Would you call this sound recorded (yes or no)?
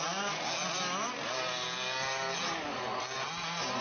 yes